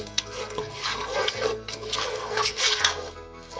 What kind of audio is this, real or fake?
fake